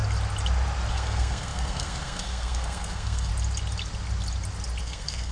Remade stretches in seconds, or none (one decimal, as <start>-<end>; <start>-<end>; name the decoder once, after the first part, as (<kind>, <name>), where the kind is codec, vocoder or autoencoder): 0.9-3.3 (codec, SNAC); 4.8-5.3